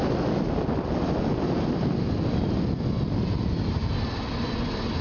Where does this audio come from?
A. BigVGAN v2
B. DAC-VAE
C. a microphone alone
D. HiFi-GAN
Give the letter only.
C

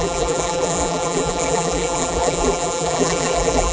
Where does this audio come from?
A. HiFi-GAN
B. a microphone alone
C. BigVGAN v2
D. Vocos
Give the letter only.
C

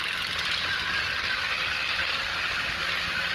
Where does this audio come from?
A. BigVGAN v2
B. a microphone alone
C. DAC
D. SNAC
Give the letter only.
B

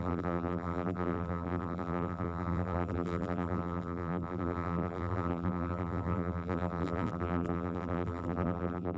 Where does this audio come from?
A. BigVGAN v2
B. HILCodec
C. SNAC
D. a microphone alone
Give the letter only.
A